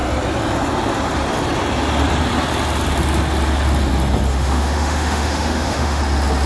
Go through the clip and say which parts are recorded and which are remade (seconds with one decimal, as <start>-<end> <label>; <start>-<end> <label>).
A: 0.0-4.3 recorded; 4.3-6.0 remade; 6.0-6.5 recorded